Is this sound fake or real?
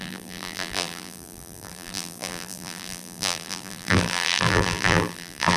fake